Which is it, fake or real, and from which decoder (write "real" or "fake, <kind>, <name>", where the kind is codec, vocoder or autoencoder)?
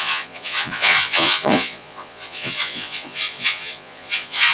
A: fake, vocoder, Vocos